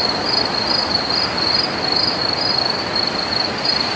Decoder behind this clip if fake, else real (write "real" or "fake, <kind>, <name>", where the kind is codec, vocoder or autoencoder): real